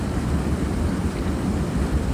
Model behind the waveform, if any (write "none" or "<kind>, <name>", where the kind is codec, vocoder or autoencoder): vocoder, BigVGAN v2